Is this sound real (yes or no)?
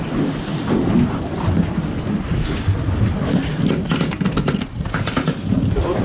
yes